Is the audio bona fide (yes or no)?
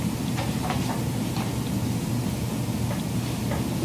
yes